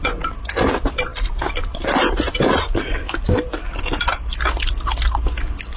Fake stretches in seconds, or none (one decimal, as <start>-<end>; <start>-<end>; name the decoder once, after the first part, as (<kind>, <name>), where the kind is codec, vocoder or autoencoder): none